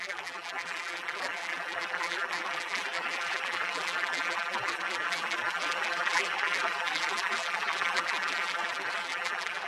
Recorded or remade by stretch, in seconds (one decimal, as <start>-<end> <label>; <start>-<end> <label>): 0.0-9.7 remade